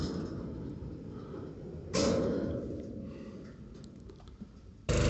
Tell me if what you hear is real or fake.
real